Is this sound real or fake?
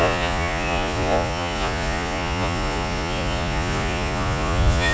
fake